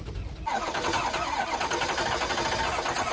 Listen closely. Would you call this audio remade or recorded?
recorded